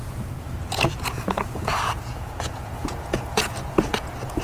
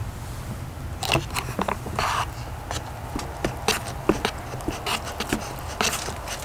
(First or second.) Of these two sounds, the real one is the second